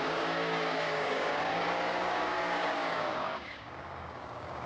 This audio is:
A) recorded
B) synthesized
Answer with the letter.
B